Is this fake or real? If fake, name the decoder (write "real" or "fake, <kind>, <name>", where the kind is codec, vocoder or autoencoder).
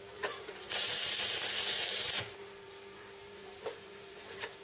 fake, vocoder, BigVGAN v2